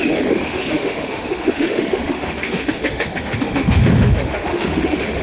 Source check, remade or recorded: remade